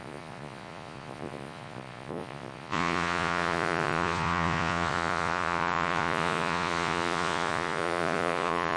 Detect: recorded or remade remade